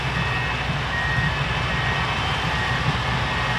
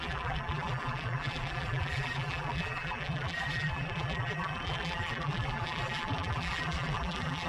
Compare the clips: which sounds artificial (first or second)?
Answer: second